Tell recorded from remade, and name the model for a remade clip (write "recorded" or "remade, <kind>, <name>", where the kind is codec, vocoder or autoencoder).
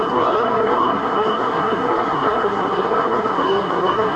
remade, codec, SNAC